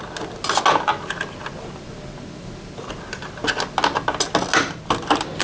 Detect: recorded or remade recorded